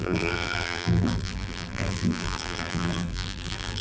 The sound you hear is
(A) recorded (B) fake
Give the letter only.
B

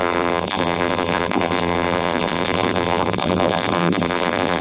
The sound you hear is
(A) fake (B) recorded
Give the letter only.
A